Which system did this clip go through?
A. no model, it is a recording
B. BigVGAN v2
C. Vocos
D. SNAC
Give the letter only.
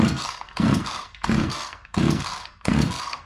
D